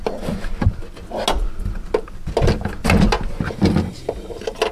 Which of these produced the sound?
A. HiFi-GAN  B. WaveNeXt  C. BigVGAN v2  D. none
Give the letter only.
D